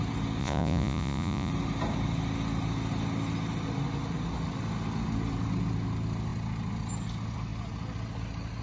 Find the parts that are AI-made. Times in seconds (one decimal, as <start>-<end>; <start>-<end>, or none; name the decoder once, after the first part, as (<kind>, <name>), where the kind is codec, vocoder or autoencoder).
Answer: 0.4-1.5 (vocoder, Vocos)